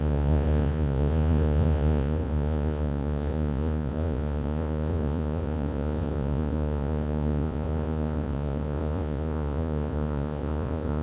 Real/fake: fake